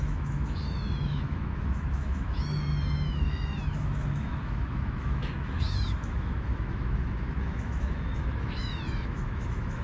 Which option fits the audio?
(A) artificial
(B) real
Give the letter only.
A